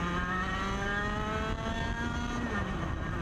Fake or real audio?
real